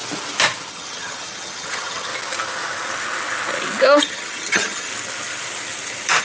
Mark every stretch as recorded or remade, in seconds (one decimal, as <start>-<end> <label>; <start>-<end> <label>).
0.0-0.7 recorded; 0.7-2.1 remade; 2.1-4.0 recorded; 4.0-4.9 remade; 4.9-6.2 recorded

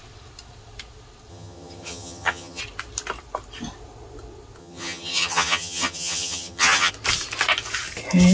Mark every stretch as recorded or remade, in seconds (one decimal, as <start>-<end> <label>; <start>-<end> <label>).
0.0-1.3 recorded; 1.3-2.6 remade; 2.6-4.6 recorded; 4.6-6.9 remade; 6.9-8.3 recorded

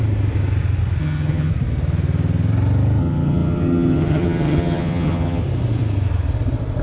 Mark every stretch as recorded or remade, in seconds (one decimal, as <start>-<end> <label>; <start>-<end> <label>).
0.0-1.0 recorded; 1.0-1.5 remade; 1.5-3.0 recorded; 3.0-5.4 remade; 5.4-6.8 recorded

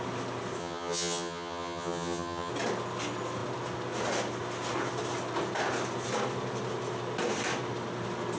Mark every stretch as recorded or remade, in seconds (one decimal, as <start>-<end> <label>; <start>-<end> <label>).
0.0-0.6 recorded; 0.6-2.5 remade; 2.5-8.4 recorded

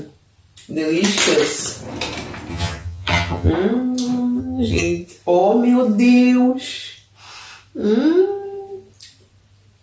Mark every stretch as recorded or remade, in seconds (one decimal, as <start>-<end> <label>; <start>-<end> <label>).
0.0-2.5 recorded; 2.5-3.5 remade; 3.5-4.4 recorded; 4.4-5.0 remade; 5.0-9.8 recorded

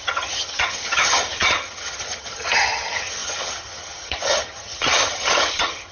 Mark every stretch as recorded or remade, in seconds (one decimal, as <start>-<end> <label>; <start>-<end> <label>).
0.0-5.9 remade

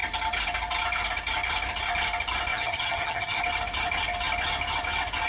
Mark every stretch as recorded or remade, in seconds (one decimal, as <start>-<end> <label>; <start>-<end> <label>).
0.0-2.5 recorded; 2.5-3.4 remade; 3.4-5.3 recorded

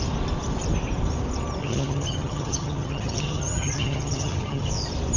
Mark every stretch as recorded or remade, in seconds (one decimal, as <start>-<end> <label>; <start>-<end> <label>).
0.0-1.6 recorded; 1.6-4.7 remade; 4.7-5.2 recorded